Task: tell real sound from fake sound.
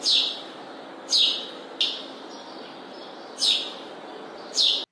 real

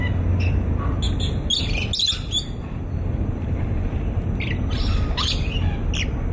real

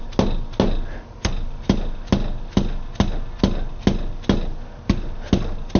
real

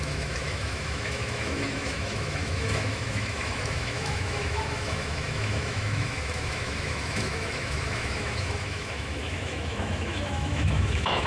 fake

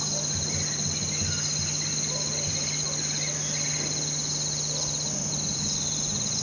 real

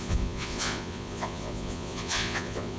fake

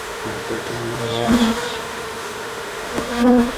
fake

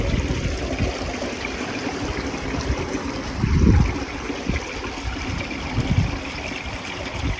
real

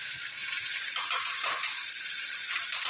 real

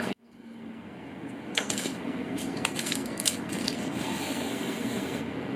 fake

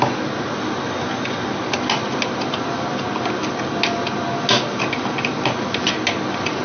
real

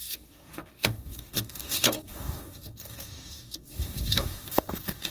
fake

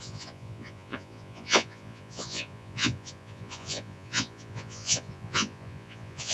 fake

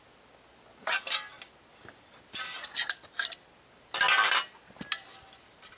real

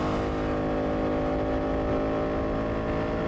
real